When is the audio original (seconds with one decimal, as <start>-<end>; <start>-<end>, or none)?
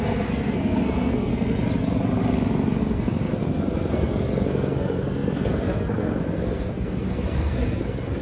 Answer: 1.3-2.8